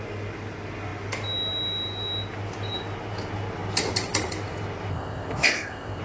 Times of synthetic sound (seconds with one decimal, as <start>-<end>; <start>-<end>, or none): 4.9-6.0